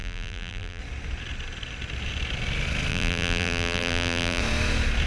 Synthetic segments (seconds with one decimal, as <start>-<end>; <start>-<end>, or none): 0.0-0.8; 2.9-4.4